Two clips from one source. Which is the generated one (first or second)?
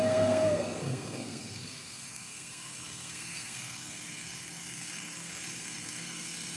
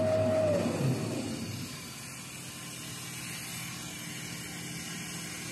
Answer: first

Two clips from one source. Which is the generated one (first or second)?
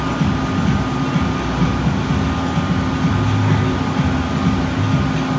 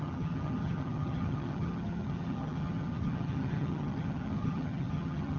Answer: second